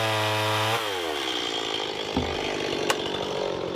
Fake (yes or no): no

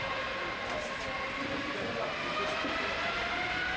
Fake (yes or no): no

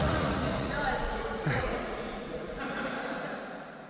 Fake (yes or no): yes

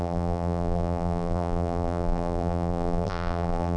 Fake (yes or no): yes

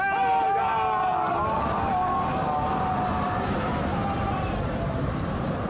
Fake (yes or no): no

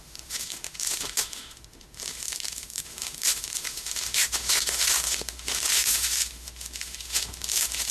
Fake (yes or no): yes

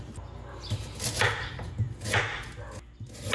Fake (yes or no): no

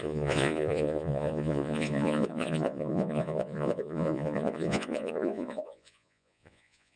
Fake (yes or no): yes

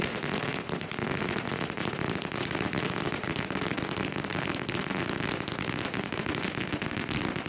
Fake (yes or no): no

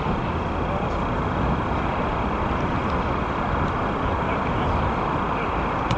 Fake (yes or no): no